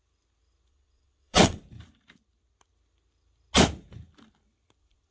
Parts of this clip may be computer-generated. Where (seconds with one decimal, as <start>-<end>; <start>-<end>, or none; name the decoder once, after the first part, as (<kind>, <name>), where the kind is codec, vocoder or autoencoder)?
0.7-1.6 (vocoder, WaveNeXt)